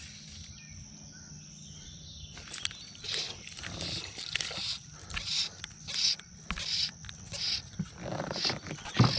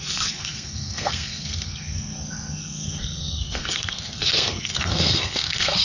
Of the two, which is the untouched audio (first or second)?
first